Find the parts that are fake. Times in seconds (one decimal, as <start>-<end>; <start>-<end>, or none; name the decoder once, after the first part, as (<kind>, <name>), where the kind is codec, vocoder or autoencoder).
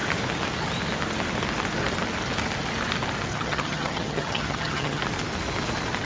3.3-5.0 (vocoder, HiFi-GAN)